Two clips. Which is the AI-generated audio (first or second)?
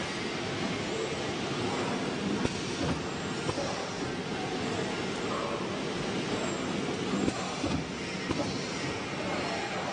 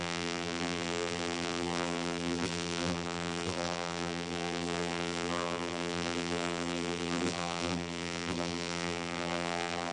second